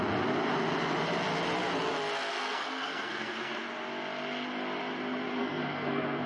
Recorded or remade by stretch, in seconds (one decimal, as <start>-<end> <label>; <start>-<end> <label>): 0.0-2.3 recorded; 2.3-3.5 remade; 3.5-5.4 recorded; 5.4-6.3 remade